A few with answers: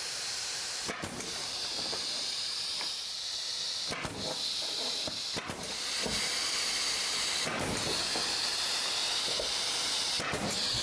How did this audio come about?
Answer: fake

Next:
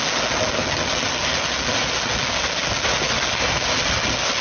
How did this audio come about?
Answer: real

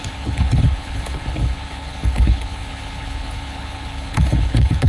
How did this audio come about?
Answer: fake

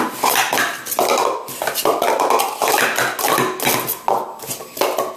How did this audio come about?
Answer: real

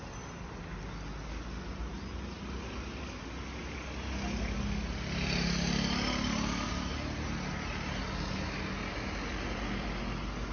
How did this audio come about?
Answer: real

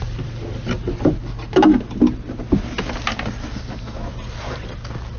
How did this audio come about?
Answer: real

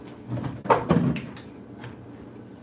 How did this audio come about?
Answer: real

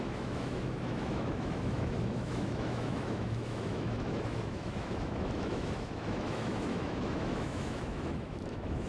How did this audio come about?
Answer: fake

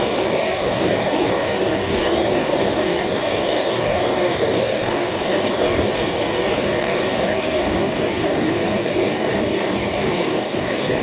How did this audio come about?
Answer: fake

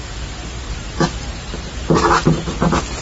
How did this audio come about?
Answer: real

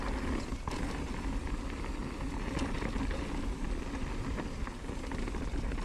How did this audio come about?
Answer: real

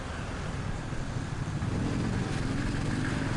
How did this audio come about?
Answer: real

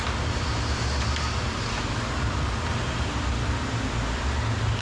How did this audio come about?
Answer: real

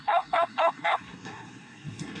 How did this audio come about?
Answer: fake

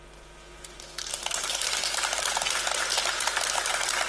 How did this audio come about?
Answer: real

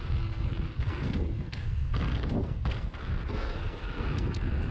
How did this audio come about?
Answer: fake